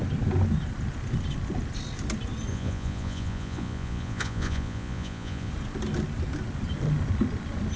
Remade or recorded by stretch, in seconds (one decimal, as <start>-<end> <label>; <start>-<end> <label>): 0.0-2.5 recorded; 2.5-5.5 remade; 5.5-7.8 recorded